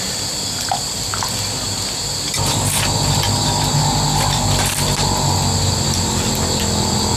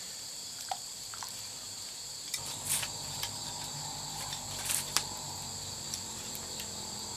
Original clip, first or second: first